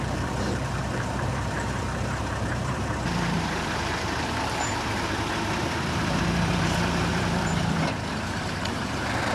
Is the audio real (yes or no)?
no